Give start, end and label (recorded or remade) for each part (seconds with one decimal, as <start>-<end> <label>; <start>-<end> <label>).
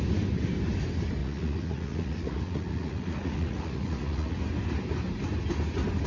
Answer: 0.0-1.2 recorded; 1.2-4.4 remade; 4.4-6.1 recorded